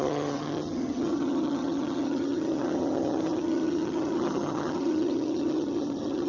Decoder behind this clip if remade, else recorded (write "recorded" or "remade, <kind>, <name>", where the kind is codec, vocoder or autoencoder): remade, vocoder, HiFi-GAN